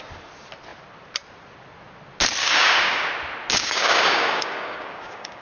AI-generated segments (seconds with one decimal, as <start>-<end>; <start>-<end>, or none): 2.4-3.1; 3.5-5.4